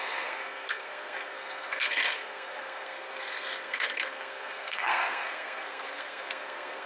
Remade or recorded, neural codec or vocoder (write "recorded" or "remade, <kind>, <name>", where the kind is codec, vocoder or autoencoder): remade, codec, SNAC